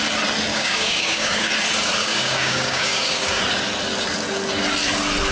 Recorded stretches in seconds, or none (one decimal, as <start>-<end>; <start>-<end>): 0.0-0.5; 1.5-2.0; 3.4-5.3